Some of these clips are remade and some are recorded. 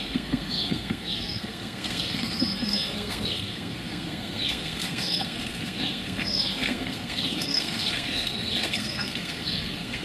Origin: remade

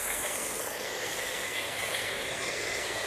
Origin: remade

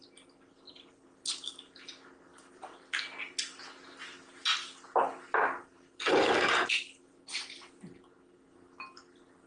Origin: recorded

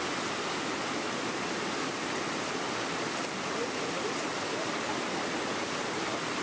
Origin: recorded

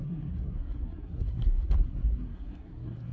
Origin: remade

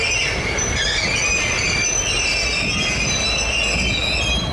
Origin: recorded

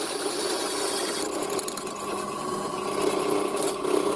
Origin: recorded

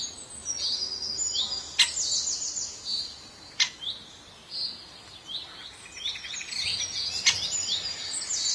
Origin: recorded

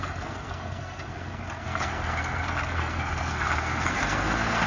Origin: remade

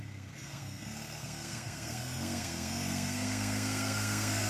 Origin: remade